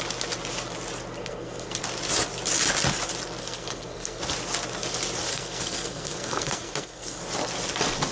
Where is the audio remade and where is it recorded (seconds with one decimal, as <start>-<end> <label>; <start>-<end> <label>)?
0.0-1.2 recorded; 1.2-1.8 remade; 1.8-3.4 recorded; 3.4-4.2 remade; 4.2-5.3 recorded; 5.3-7.2 remade; 7.2-8.1 recorded